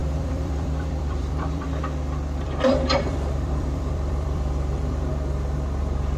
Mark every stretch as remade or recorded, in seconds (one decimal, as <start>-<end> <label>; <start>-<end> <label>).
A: 0.0-5.1 remade; 5.1-5.8 recorded; 5.8-6.2 remade